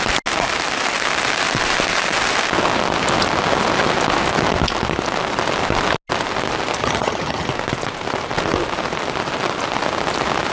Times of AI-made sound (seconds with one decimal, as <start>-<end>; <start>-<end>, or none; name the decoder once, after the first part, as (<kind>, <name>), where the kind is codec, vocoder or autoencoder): 6.8-7.5 (vocoder, HiFi-GAN)